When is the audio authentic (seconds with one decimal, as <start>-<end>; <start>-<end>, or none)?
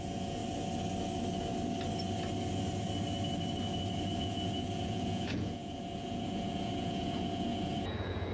0.4-4.1